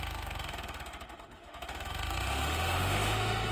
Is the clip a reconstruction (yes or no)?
yes